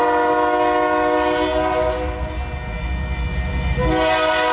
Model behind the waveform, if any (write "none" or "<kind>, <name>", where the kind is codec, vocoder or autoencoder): none